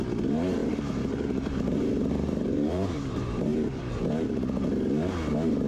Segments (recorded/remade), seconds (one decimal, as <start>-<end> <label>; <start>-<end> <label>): 0.0-0.6 recorded; 0.6-4.0 remade; 4.0-5.7 recorded